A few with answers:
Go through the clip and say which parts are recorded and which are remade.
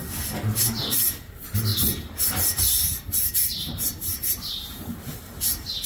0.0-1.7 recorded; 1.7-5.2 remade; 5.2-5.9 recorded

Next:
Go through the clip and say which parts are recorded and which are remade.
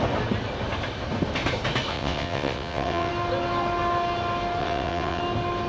0.0-1.9 recorded; 1.9-3.1 remade; 3.1-4.6 recorded; 4.6-5.2 remade; 5.2-5.7 recorded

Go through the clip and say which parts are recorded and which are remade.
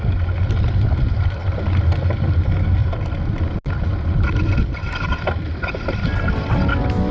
0.0-7.1 recorded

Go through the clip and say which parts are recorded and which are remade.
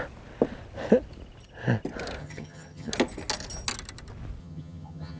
0.0-2.2 recorded; 2.2-2.9 remade; 2.9-4.4 recorded; 4.4-5.2 remade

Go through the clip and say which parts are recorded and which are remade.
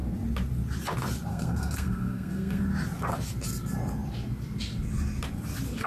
0.0-1.3 recorded; 1.3-2.6 remade; 2.6-5.9 recorded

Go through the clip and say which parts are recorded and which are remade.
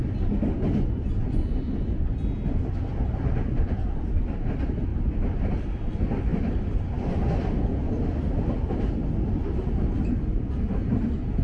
0.0-4.9 recorded; 4.9-5.5 remade; 5.5-6.3 recorded; 6.3-7.1 remade; 7.1-11.4 recorded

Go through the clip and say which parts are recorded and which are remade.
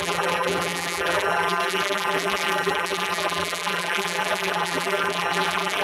0.0-5.8 remade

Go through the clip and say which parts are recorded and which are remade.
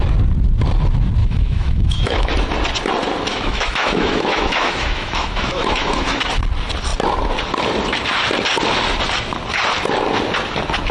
0.0-1.2 recorded; 1.2-2.3 remade; 2.3-3.3 recorded; 3.3-6.2 remade; 6.2-10.9 recorded